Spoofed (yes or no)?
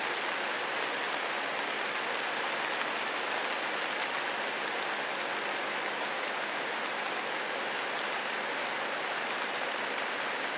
no